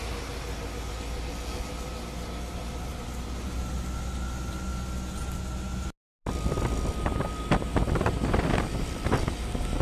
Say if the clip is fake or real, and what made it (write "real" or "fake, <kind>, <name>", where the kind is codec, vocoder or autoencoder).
real